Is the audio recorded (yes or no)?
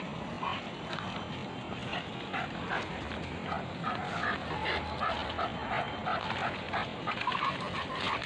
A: yes